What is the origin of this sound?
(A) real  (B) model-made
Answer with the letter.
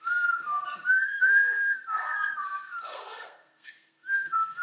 B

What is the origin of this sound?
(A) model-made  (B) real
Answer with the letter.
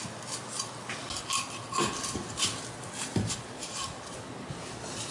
B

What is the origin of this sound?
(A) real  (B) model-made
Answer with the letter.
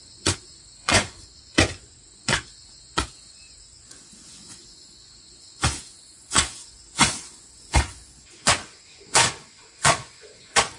B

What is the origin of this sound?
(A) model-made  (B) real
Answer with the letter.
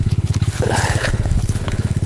A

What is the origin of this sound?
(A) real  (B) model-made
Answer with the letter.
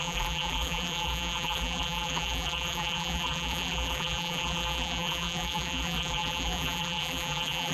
B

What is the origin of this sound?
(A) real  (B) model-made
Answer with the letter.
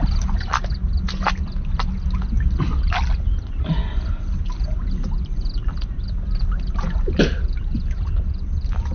A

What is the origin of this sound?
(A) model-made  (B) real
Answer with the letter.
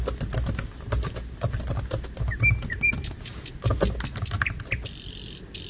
B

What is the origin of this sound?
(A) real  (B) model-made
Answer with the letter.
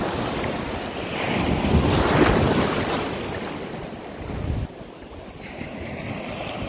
A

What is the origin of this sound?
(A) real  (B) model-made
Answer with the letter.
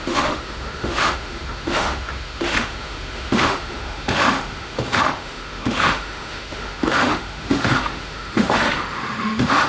B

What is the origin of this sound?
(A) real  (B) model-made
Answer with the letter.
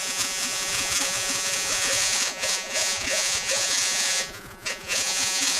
B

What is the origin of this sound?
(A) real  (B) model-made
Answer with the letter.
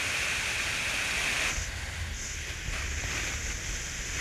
A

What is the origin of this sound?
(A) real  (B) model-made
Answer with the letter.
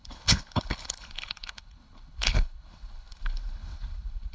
B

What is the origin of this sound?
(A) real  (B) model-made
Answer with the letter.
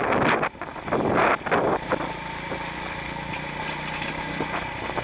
A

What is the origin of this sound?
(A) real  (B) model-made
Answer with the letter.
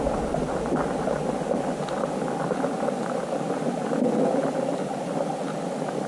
A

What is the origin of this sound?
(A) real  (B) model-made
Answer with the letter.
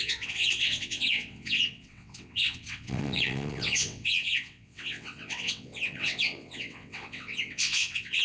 B